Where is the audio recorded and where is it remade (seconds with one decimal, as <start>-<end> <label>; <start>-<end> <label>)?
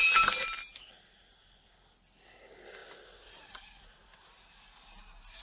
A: 0.0-5.4 recorded